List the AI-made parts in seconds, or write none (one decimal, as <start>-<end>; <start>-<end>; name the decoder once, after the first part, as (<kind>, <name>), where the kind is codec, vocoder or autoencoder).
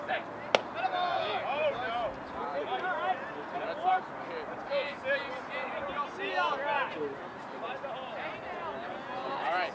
1.1-1.8 (vocoder, Vocos)